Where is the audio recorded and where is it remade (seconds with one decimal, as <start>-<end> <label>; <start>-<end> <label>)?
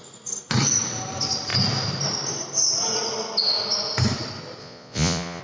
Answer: 0.0-4.6 recorded; 4.6-5.4 remade